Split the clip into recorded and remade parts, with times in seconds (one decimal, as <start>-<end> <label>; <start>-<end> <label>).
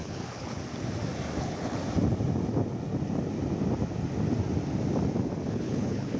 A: 0.0-0.6 remade; 0.6-1.4 recorded; 1.4-1.8 remade; 1.8-5.5 recorded; 5.5-6.2 remade